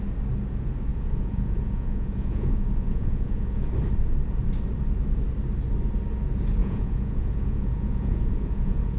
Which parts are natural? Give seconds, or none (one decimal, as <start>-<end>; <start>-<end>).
0.0-0.9; 3.7-6.6